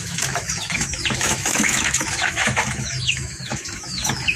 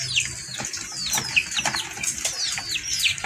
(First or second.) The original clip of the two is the second